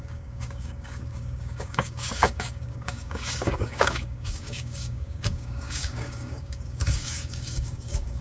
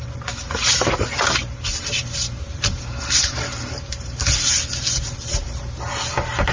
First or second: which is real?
second